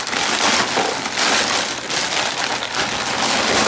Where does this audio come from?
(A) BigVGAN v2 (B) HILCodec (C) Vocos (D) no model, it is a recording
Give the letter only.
D